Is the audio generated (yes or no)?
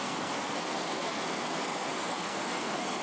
yes